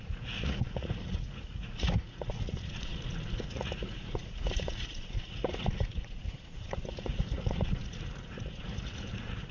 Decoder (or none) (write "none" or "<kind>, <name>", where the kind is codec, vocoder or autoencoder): vocoder, Vocos